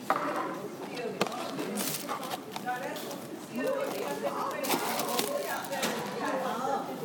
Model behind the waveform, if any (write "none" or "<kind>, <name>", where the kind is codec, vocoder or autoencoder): none